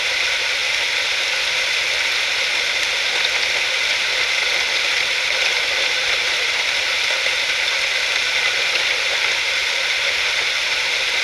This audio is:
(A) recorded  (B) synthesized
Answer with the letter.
B